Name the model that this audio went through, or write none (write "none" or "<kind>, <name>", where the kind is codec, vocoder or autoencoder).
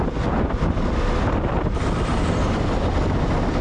none